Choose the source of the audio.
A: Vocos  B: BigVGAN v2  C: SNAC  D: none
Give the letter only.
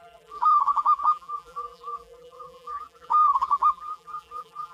B